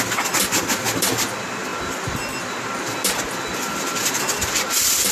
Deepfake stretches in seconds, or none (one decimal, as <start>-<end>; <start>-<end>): none